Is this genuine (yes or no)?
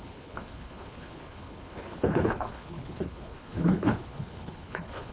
no